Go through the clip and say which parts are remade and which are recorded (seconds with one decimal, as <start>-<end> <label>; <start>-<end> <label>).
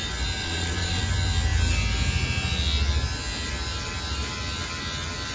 0.0-0.4 recorded; 0.4-1.0 remade; 1.0-5.3 recorded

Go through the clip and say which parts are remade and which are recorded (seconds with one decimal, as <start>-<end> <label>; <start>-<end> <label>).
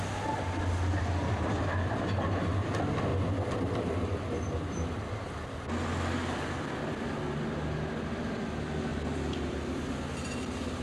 0.0-10.8 recorded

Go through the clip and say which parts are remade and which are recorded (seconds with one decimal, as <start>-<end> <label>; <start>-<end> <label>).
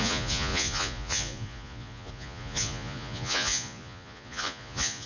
0.0-5.1 remade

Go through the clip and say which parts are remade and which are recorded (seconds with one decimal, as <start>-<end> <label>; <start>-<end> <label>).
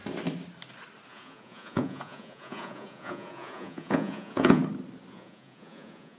0.0-1.1 recorded; 1.1-4.6 remade; 4.6-5.1 recorded; 5.1-6.2 remade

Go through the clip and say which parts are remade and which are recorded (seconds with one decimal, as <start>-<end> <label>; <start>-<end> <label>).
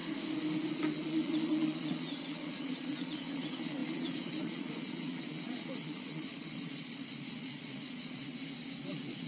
0.0-0.7 recorded; 0.7-8.3 remade; 8.3-8.9 recorded; 8.9-9.3 remade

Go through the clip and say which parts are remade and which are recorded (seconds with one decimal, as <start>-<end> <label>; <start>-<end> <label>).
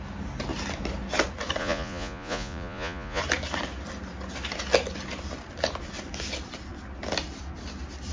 0.0-1.6 recorded; 1.6-3.2 remade; 3.2-8.1 recorded